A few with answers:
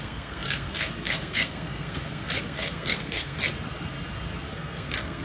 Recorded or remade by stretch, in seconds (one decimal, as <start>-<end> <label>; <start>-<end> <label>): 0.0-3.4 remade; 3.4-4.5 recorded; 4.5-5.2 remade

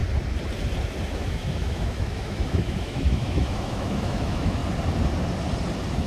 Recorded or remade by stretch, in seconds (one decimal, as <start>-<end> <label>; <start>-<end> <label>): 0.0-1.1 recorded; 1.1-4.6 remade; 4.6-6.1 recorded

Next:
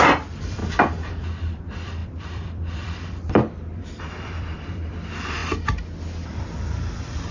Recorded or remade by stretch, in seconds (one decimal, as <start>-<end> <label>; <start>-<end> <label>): 0.0-0.6 remade; 0.6-1.4 recorded; 1.4-5.4 remade; 5.4-6.3 recorded; 6.3-7.3 remade